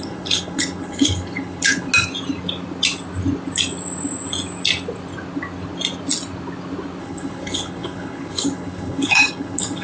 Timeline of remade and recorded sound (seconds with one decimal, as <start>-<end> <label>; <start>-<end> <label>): 0.0-1.9 remade; 1.9-7.0 recorded; 7.0-9.8 remade